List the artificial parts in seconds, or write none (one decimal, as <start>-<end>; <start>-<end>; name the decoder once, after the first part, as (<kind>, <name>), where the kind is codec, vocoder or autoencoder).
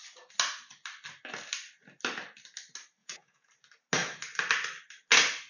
3.0-3.5 (vocoder, Vocos)